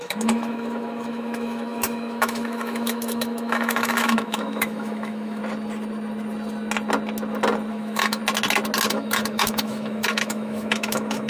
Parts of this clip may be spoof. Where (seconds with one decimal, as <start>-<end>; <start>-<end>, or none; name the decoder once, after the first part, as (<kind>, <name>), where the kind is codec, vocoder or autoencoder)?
0.0-5.4 (autoencoder, DAC-VAE); 7.7-8.2; 8.9-11.3